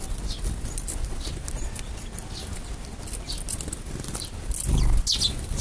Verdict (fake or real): real